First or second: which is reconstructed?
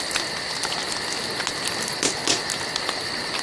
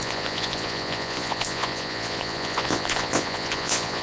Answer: second